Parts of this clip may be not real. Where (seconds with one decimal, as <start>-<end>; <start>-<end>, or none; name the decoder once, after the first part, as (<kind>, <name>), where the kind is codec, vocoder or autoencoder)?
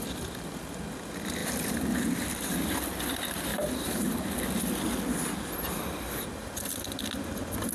1.4-2.5 (vocoder, BigVGAN v2); 3.5-4.2